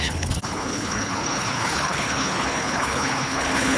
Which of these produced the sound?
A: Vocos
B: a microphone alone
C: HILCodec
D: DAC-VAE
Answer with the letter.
C